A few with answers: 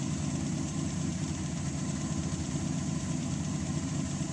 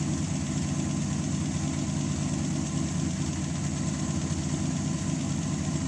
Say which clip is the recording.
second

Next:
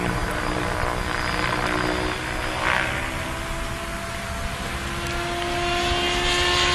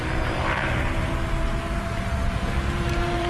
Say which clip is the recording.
first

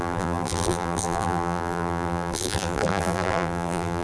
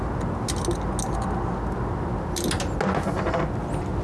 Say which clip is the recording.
second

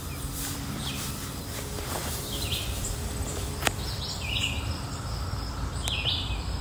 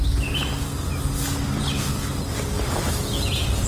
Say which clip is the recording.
second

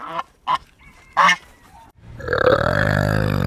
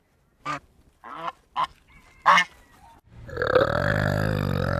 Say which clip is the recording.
second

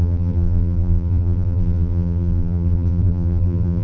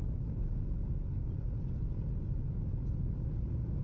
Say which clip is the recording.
second